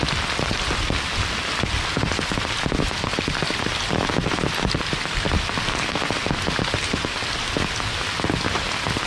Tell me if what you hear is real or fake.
real